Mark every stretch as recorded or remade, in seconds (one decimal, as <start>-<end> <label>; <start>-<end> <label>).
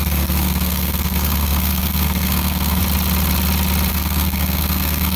0.0-2.8 remade; 2.8-3.9 recorded; 3.9-5.2 remade